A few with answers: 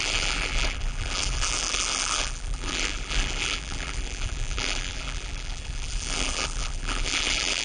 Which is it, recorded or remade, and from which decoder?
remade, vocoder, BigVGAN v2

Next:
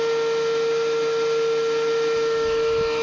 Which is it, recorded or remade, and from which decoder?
recorded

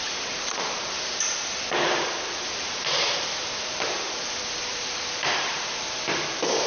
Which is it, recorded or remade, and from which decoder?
remade, vocoder, BigVGAN v2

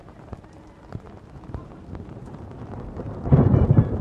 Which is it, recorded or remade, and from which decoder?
remade, vocoder, BigVGAN v2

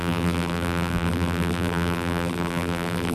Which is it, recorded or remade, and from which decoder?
remade, vocoder, BigVGAN v2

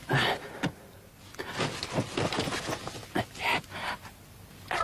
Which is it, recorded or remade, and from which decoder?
recorded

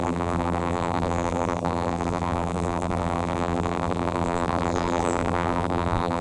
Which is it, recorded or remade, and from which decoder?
remade, vocoder, BigVGAN v2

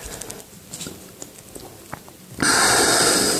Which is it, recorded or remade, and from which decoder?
recorded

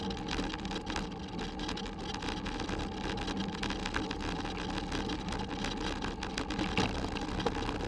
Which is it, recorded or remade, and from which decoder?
recorded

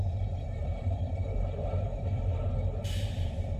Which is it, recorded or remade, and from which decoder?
remade, vocoder, BigVGAN v2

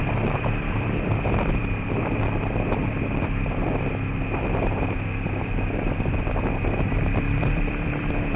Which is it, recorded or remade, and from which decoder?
remade, vocoder, BigVGAN v2